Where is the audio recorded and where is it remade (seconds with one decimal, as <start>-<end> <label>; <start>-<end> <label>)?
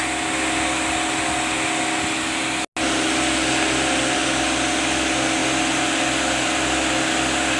0.0-7.6 recorded